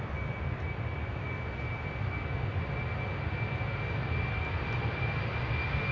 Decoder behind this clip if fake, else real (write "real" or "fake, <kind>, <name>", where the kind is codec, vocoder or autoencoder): real